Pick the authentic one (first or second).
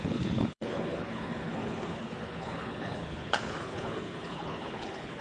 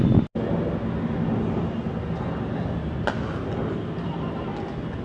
second